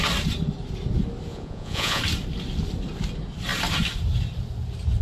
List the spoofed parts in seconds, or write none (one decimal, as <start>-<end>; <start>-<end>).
1.3-2.0